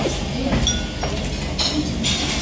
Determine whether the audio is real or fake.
real